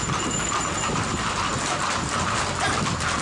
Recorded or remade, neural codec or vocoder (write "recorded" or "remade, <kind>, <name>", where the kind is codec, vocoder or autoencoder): remade, vocoder, BigVGAN v2